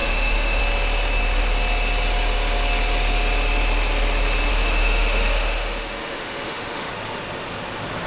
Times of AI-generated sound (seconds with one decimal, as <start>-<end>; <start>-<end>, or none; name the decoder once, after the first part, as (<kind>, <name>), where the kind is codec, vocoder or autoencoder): 0.0-0.6 (autoencoder, DAC-VAE); 4.5-6.9